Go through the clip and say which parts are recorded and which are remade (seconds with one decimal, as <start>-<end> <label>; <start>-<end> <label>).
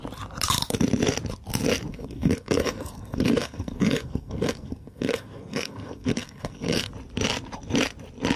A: 0.0-1.9 recorded; 1.9-6.9 remade; 6.9-8.4 recorded